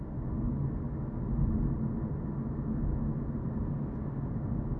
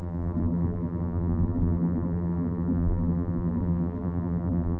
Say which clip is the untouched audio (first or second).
first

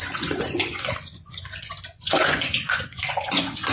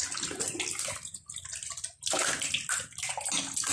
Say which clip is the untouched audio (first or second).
second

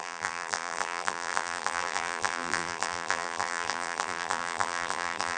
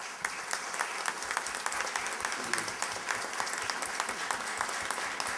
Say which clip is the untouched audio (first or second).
second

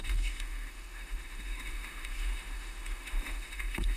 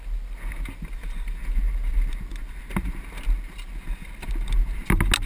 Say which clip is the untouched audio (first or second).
second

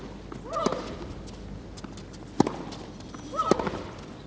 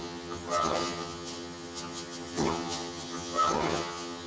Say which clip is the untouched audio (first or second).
first